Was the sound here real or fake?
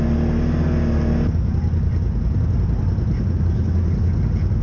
real